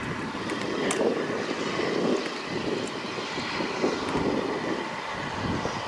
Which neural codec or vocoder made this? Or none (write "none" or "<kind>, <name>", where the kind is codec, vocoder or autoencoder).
none